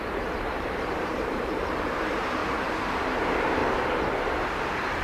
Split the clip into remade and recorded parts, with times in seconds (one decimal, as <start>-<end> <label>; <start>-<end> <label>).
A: 0.0-2.4 remade; 2.4-3.0 recorded; 3.0-3.6 remade; 3.6-4.2 recorded; 4.2-5.0 remade